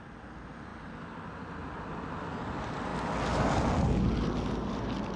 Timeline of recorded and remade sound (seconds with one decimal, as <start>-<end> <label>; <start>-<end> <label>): 0.0-5.2 recorded